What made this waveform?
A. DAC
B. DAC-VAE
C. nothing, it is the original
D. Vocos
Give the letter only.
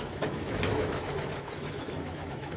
B